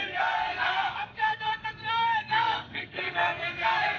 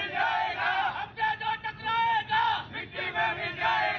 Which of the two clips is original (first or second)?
second